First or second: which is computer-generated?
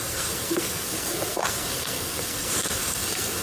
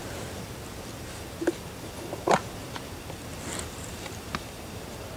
first